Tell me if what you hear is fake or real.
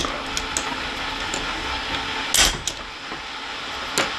real